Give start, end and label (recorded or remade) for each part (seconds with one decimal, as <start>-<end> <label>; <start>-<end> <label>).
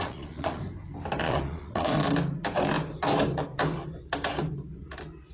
0.0-0.6 remade; 0.6-1.2 recorded; 1.2-2.0 remade; 2.0-5.3 recorded